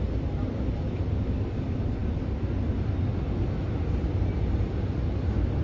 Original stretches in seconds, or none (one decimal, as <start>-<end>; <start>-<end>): 0.0-5.6